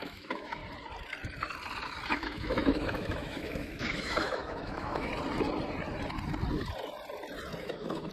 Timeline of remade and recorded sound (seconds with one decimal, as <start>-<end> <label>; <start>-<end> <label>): 0.0-0.6 remade; 0.6-2.1 recorded; 2.1-5.1 remade; 5.1-7.6 recorded; 7.6-8.1 remade